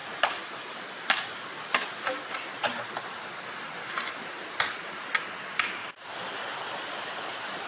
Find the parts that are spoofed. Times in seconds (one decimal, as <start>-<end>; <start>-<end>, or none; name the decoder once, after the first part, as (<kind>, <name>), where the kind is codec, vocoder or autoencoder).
0.0-0.8 (vocoder, BigVGAN v2); 2.6-5.3; 5.8-6.6